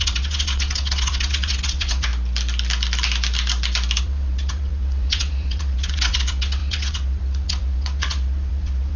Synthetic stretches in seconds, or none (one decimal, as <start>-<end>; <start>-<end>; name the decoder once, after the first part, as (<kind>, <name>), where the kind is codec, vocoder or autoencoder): 0.0-2.1 (vocoder, WaveNeXt); 4.0-9.0